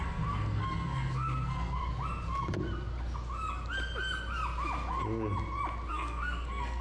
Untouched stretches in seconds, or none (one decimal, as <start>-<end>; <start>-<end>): 1.8-5.9

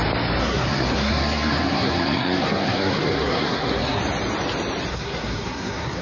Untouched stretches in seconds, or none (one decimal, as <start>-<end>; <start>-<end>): 0.0-0.4; 4.0-4.9

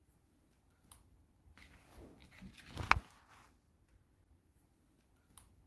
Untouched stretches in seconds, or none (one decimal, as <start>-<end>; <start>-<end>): 0.0-5.7

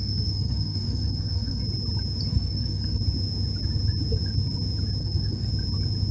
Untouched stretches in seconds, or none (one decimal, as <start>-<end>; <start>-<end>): 1.6-2.3; 3.0-5.0; 5.5-6.1

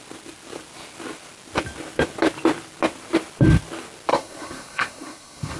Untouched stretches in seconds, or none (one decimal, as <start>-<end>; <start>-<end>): 0.0-4.1